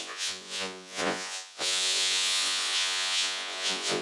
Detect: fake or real fake